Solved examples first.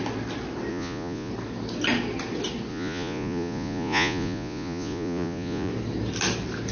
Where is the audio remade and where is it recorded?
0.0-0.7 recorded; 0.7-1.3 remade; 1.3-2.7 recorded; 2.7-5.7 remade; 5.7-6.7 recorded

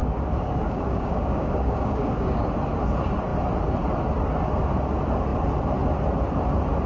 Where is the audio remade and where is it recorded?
0.0-2.4 remade; 2.4-6.9 recorded